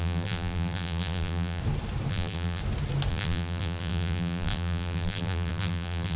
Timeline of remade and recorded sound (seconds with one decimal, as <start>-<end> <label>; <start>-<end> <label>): 0.0-1.6 remade; 1.6-2.1 recorded; 2.1-2.6 remade; 2.6-3.1 recorded; 3.1-6.2 remade